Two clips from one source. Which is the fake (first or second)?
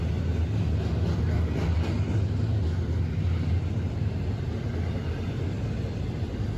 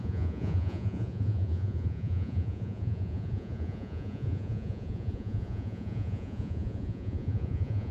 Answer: second